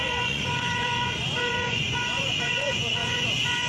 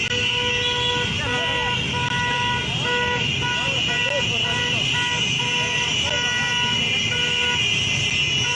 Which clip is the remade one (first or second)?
first